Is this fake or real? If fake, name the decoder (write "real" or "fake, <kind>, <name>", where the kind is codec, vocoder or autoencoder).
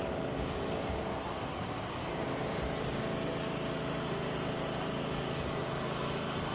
real